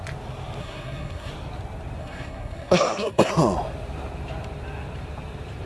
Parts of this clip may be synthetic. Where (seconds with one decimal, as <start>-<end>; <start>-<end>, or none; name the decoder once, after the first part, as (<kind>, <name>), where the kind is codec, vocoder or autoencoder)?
0.6-1.3 (codec, SNAC); 2.0-3.3